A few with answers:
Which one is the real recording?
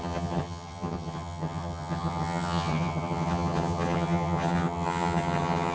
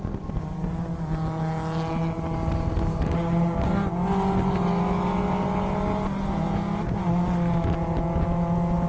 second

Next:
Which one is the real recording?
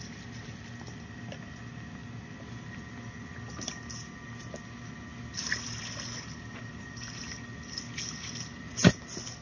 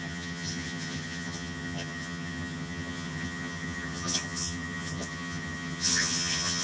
first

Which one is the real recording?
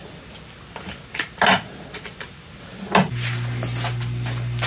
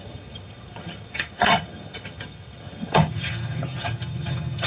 first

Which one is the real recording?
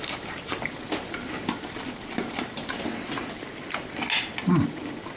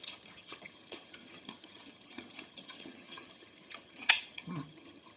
first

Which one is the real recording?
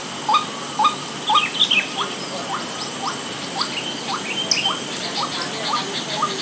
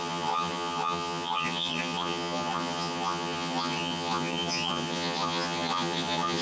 first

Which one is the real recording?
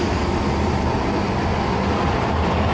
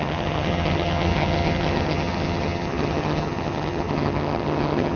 first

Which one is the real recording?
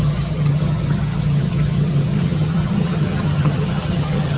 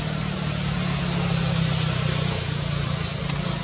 second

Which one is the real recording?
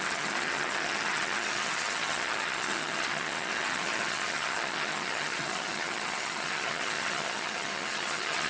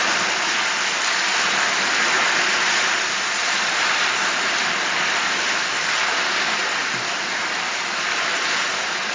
second